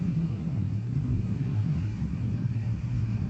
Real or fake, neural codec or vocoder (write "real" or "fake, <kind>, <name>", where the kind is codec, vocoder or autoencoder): fake, codec, SNAC